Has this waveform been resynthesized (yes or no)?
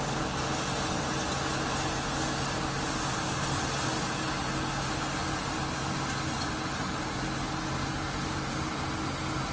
no